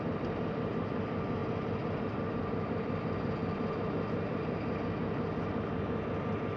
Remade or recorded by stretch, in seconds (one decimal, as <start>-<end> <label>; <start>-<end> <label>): 0.0-1.4 remade; 1.4-2.1 recorded; 2.1-3.4 remade; 3.4-6.6 recorded